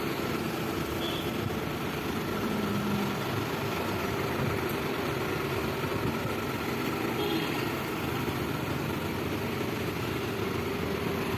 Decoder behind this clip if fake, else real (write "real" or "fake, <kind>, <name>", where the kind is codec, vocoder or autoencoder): real